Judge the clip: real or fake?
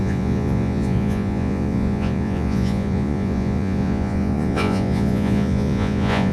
fake